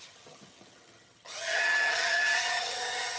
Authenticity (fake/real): fake